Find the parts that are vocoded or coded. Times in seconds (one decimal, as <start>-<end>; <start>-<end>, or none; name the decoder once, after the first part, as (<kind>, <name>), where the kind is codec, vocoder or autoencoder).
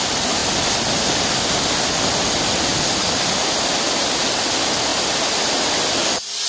0.4-1.9 (vocoder, BigVGAN v2)